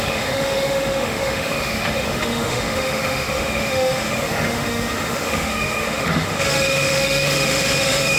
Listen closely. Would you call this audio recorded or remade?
remade